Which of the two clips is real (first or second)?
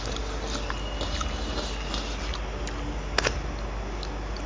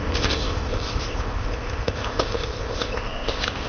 first